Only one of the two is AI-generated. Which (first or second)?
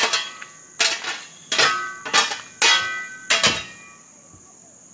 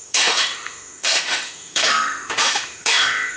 second